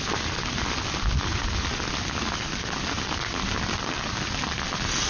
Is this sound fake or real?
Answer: real